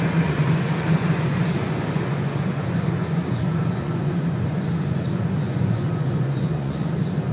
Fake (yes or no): yes